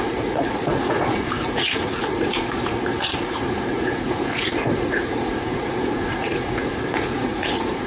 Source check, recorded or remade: remade